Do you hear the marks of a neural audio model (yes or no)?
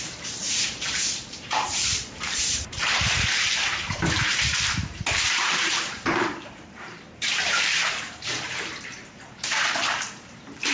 yes